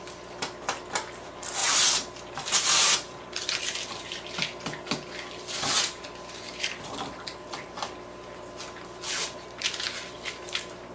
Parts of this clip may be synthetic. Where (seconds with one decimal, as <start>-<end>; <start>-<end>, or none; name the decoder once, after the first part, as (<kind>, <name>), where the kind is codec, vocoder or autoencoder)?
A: none